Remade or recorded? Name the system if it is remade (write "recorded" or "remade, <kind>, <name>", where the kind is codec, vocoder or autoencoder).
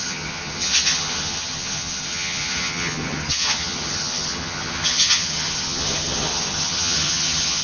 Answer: remade, vocoder, HiFi-GAN